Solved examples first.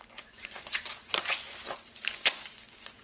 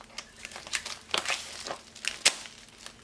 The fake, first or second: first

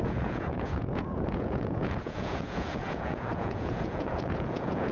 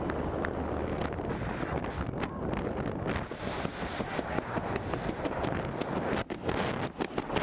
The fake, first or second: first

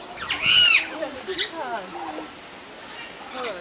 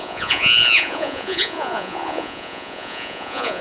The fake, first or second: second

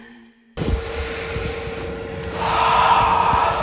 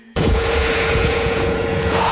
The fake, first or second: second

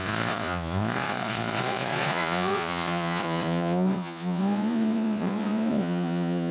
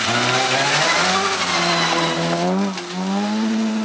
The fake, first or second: first